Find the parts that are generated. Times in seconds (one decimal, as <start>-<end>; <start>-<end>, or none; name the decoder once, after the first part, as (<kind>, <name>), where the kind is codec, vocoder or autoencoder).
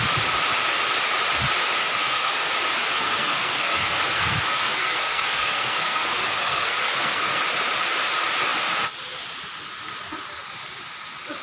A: 1.8-2.5 (codec, SNAC); 2.9-7.4